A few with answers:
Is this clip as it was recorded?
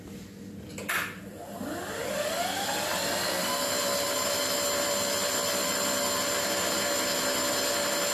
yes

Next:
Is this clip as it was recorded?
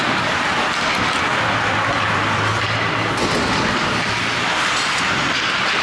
no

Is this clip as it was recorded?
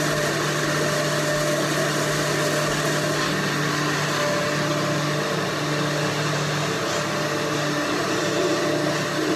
yes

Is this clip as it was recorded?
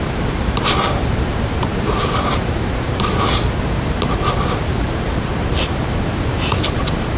no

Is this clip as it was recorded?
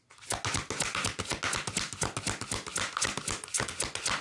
yes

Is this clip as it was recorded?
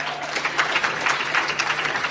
no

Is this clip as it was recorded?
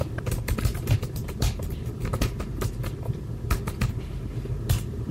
yes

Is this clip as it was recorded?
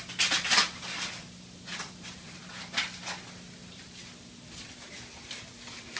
yes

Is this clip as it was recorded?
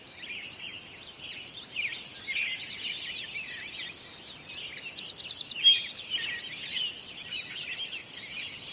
yes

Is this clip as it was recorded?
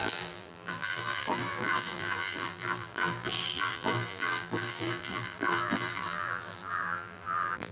no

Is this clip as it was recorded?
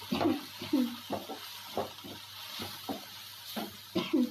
yes